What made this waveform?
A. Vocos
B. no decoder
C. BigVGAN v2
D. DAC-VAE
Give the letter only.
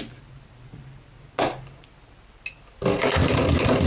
B